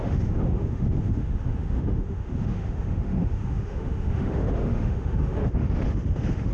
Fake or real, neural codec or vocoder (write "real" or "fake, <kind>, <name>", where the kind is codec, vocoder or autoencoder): fake, autoencoder, DAC-VAE